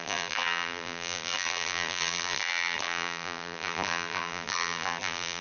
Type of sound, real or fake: fake